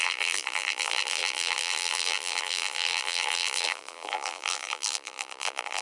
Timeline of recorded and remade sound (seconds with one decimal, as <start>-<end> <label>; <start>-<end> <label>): 0.0-5.8 remade